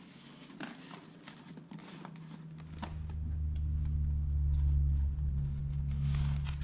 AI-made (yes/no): no